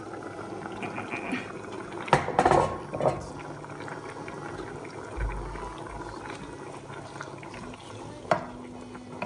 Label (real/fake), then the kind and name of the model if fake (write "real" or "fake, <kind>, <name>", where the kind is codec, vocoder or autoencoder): real